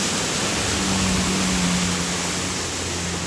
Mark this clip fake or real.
real